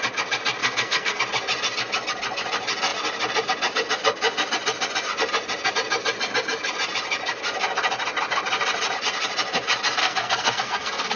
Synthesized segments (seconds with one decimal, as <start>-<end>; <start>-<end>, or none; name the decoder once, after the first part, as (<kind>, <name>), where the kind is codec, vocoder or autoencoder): 0.6-1.2 (codec, SNAC); 10.0-11.2